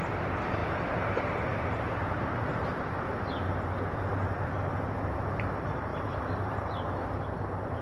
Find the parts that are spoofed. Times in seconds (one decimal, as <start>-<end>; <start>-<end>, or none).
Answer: 0.0-7.8